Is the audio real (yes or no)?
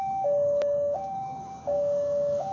no